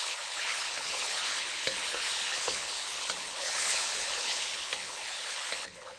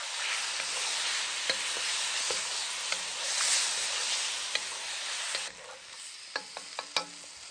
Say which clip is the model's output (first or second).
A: first